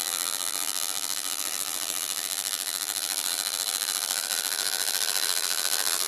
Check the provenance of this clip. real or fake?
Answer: fake